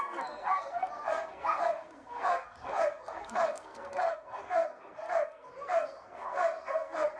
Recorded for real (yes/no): no